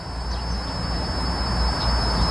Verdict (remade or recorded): recorded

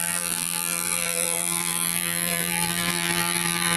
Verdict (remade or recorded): remade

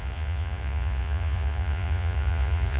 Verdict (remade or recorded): remade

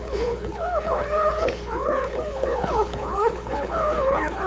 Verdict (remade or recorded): remade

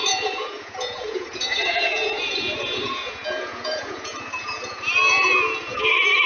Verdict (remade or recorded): remade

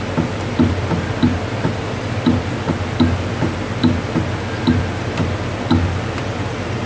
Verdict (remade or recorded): recorded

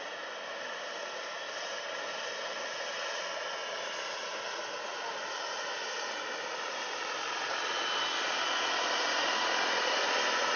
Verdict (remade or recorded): recorded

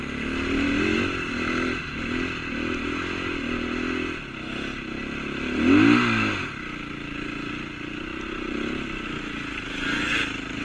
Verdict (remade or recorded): recorded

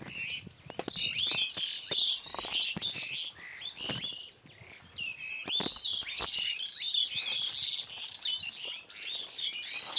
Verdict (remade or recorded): recorded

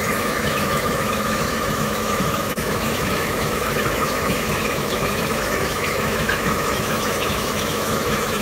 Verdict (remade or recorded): remade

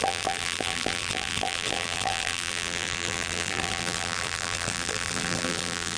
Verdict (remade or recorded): remade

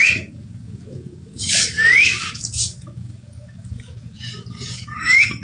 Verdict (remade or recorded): remade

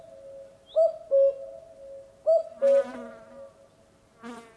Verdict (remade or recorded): recorded